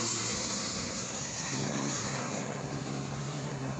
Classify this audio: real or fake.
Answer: fake